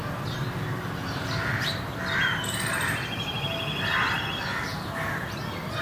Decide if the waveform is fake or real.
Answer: real